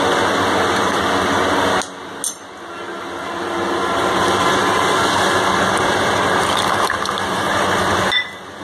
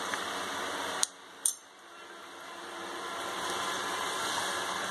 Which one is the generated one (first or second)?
second